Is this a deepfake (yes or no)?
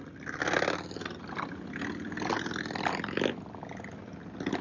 no